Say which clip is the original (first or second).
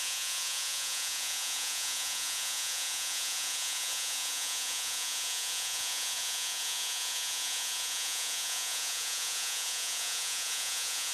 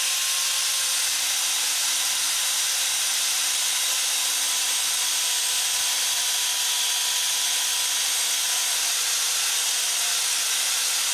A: second